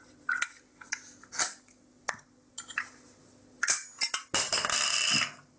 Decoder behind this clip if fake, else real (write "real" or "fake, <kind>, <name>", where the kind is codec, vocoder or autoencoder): real